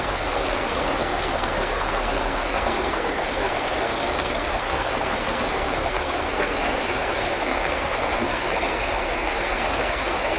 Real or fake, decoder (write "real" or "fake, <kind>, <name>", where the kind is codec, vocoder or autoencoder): fake, codec, SNAC